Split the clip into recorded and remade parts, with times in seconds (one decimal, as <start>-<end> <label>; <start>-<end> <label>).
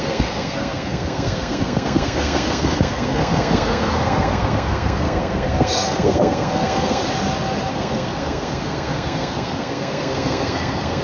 0.0-7.0 remade; 7.0-7.7 recorded; 7.7-11.0 remade